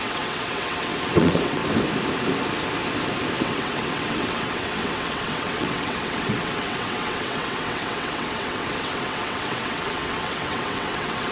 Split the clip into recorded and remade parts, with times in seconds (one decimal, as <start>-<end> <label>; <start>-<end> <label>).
0.0-1.6 remade; 1.6-3.4 recorded; 3.4-11.3 remade